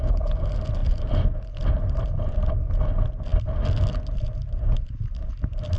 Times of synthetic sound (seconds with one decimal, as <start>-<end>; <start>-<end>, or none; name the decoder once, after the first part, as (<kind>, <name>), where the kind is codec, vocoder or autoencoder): none